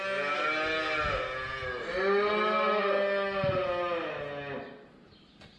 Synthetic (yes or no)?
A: no